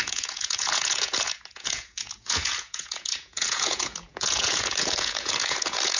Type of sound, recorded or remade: remade